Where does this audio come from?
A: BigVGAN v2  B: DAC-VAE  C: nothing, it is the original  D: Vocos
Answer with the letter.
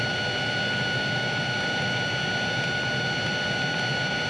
C